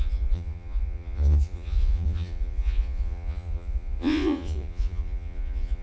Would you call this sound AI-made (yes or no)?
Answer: yes